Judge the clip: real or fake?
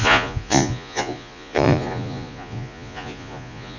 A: fake